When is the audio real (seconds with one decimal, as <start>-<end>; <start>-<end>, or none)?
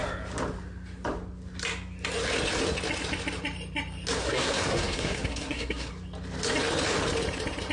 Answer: 0.0-4.2; 5.9-7.7